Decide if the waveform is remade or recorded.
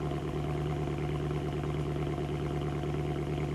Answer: recorded